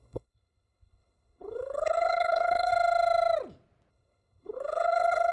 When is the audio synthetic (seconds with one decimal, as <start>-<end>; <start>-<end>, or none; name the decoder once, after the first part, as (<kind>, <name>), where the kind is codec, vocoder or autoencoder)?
0.0-2.7 (codec, HILCodec); 3.9-5.3